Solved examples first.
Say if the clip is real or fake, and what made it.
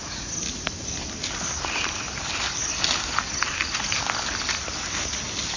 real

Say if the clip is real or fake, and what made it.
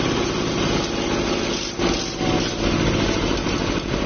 real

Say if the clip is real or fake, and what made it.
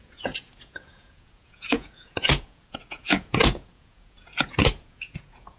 fake, vocoder, Vocos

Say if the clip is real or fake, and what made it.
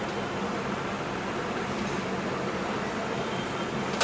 real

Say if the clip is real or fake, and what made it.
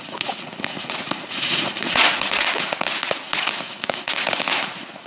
fake, vocoder, Vocos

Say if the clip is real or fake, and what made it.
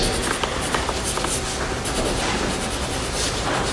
real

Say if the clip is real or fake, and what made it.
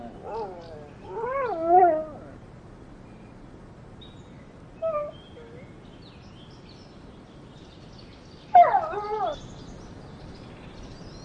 real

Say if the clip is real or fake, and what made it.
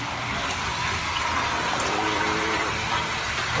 real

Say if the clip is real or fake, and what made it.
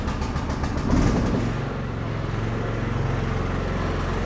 real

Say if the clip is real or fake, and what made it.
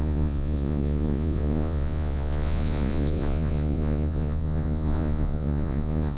fake, vocoder, Vocos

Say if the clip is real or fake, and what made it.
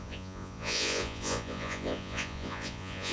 fake, vocoder, Vocos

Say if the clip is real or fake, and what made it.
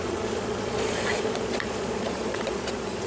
fake, vocoder, Vocos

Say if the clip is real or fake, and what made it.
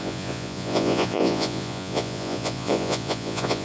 fake, vocoder, Vocos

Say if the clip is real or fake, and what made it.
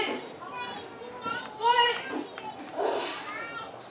real